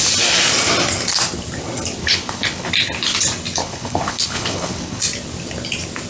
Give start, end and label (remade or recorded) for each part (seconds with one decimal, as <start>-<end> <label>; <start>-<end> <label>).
0.0-2.0 recorded; 2.0-2.7 remade; 2.7-3.6 recorded; 3.6-5.0 remade; 5.0-6.1 recorded